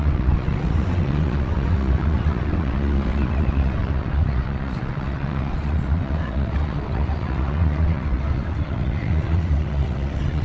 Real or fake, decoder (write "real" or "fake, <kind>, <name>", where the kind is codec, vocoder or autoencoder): fake, vocoder, WaveNeXt